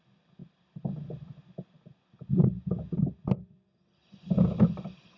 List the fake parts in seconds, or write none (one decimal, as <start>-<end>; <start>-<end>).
none